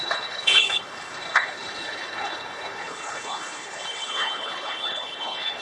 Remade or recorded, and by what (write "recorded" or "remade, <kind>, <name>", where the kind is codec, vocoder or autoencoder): remade, codec, HILCodec